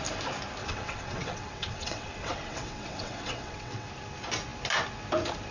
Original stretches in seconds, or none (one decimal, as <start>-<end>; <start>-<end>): 0.0-0.6; 3.9-5.5